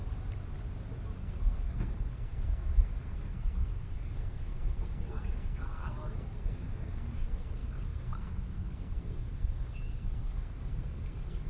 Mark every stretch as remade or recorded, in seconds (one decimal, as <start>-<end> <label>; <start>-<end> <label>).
0.0-1.2 recorded; 1.2-11.5 remade